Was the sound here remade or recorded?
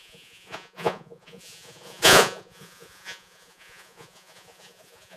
remade